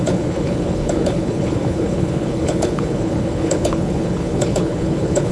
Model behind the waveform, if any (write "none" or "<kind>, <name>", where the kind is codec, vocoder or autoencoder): codec, HILCodec